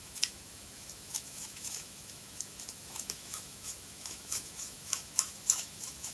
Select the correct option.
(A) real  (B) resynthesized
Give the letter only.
B